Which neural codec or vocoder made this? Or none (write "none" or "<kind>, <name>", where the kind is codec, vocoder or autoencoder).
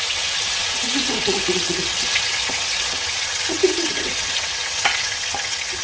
vocoder, WaveNeXt